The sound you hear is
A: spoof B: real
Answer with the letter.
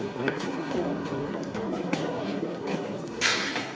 A